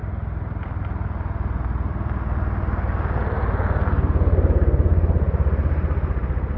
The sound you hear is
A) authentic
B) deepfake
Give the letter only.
A